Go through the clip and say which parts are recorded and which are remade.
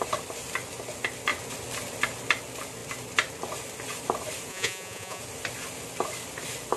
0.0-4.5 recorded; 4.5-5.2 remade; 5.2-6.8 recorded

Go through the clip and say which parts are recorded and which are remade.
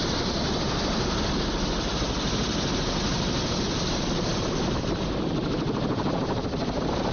0.0-3.9 recorded; 3.9-4.3 remade; 4.3-6.2 recorded; 6.2-7.1 remade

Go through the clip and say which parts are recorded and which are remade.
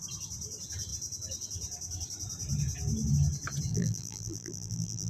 0.0-3.7 recorded; 3.7-5.1 remade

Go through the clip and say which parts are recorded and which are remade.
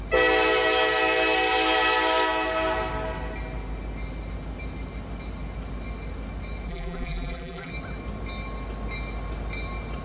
0.0-6.7 recorded; 6.7-7.7 remade; 7.7-10.0 recorded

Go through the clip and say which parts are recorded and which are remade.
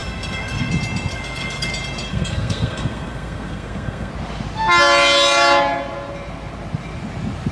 0.0-0.7 remade; 0.7-1.1 recorded; 1.1-1.7 remade; 1.7-2.1 recorded; 2.1-4.1 remade; 4.1-7.5 recorded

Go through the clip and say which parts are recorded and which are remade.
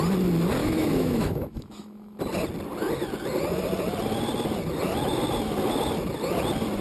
0.0-0.6 recorded; 0.6-2.2 remade; 2.2-6.8 recorded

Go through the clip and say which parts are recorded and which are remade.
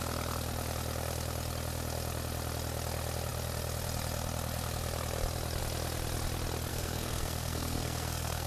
0.0-6.7 recorded; 6.7-8.5 remade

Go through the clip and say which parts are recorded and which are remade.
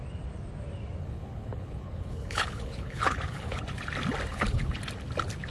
0.0-1.0 recorded; 1.0-3.6 remade; 3.6-4.3 recorded; 4.3-4.8 remade; 4.8-5.5 recorded